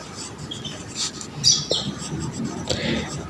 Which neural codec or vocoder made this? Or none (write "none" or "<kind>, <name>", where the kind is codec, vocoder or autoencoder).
none